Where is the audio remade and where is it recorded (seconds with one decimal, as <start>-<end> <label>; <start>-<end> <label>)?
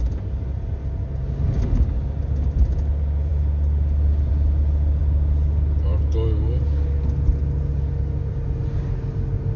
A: 0.0-9.6 recorded